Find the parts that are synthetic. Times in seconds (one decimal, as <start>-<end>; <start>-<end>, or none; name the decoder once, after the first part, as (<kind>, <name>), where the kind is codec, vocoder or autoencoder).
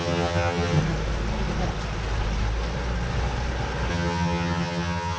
0.0-0.8 (vocoder, HiFi-GAN); 3.9-5.2